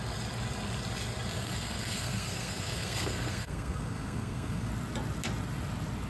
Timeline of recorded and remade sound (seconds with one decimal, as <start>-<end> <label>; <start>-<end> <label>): 0.0-1.3 recorded; 1.3-4.7 remade; 4.7-6.1 recorded